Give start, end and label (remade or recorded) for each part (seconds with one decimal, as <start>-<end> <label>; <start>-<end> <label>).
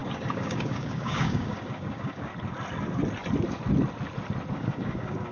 0.0-2.3 remade; 2.3-4.5 recorded; 4.5-5.3 remade